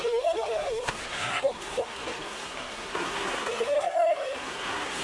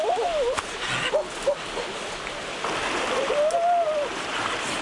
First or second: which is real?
second